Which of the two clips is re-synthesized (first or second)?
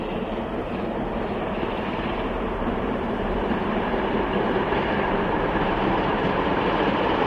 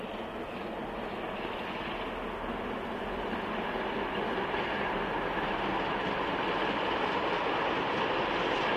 first